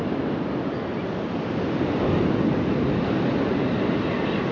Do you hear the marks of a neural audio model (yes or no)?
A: no